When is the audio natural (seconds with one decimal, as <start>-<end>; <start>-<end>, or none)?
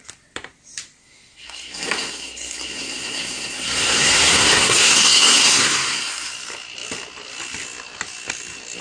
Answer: 0.0-1.0; 6.3-8.8